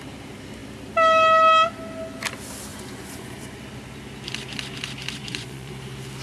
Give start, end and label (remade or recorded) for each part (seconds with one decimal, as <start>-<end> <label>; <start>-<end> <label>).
0.0-2.7 recorded; 2.7-3.6 remade; 3.6-5.2 recorded; 5.2-5.7 remade; 5.7-6.2 recorded